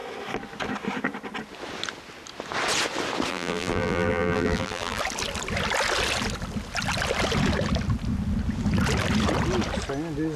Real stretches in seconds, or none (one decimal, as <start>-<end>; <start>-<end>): 0.0-3.3; 5.0-10.4

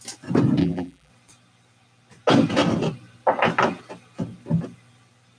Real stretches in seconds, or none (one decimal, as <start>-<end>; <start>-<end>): 0.0-0.6; 1.1-5.4

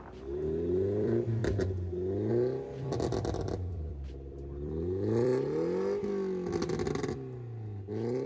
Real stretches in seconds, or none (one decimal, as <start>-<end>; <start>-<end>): 1.4-2.3; 5.3-7.9

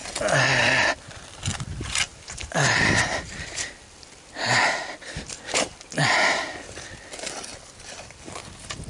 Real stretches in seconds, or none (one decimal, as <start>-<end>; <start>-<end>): 0.0-0.6

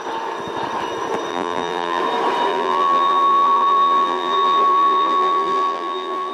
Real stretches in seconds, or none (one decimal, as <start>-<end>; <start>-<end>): 0.0-1.3; 2.0-2.5

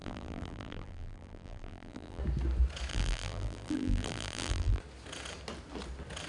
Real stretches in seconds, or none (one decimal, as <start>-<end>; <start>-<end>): 2.2-2.9; 4.8-6.3

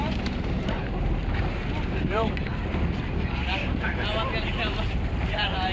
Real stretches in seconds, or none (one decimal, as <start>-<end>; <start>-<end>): 2.5-5.1